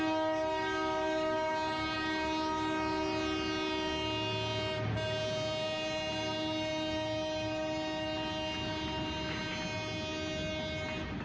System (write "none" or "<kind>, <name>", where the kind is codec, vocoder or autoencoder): none